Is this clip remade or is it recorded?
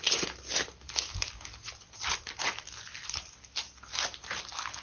recorded